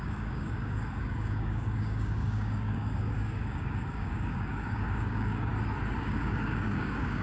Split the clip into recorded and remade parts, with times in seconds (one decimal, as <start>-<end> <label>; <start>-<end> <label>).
0.0-5.5 remade; 5.5-6.0 recorded; 6.0-7.2 remade